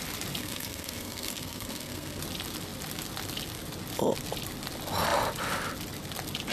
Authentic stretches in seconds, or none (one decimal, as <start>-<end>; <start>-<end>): 0.0-0.4; 2.2-6.5